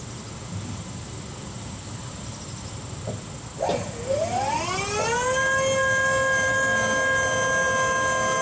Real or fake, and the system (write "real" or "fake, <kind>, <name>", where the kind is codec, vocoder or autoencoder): real